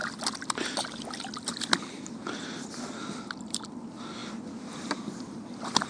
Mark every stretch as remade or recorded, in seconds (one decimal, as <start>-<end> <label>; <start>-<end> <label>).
0.0-5.9 recorded